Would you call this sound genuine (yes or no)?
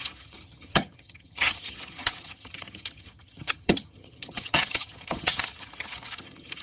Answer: no